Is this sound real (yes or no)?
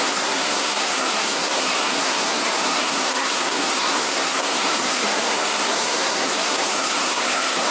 no